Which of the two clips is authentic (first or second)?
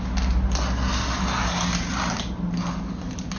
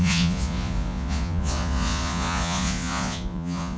first